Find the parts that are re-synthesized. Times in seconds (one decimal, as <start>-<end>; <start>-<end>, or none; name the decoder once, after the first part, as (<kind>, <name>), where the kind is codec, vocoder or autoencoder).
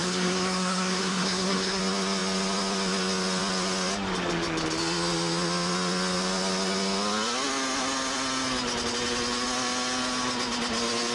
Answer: 0.0-1.8 (codec, SNAC)